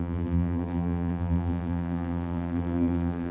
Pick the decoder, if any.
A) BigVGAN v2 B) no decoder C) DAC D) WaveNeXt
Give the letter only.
A